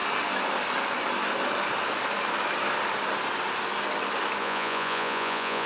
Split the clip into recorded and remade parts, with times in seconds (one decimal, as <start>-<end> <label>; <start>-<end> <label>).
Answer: 0.0-4.4 recorded; 4.4-5.7 remade